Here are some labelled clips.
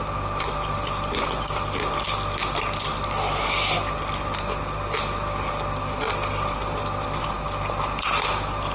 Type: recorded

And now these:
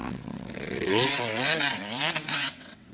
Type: remade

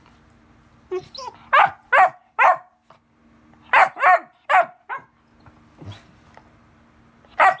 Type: recorded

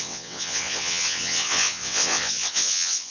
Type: remade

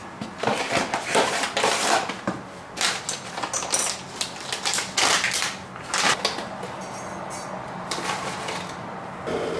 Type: recorded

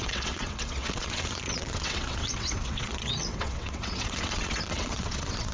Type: remade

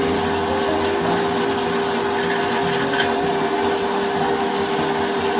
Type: recorded